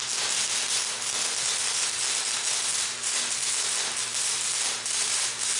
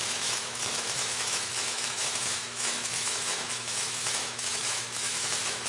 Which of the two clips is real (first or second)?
first